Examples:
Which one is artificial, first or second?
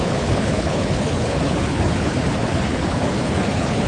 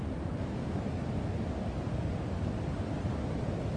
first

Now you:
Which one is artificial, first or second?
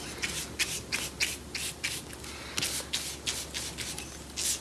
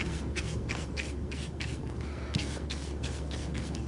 second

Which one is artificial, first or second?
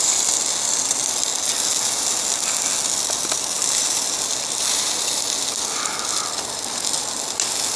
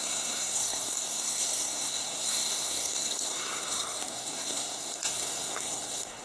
second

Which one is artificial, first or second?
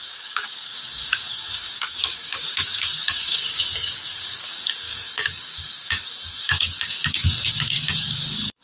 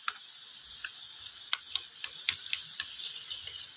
first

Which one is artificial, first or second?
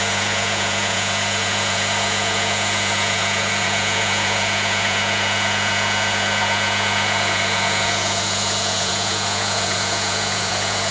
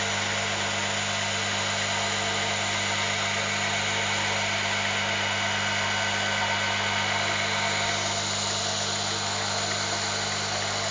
first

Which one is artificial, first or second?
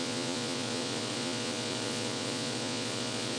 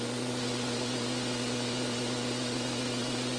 first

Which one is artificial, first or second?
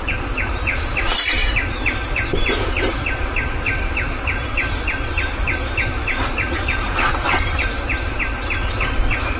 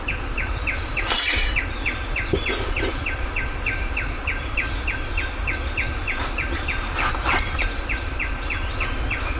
first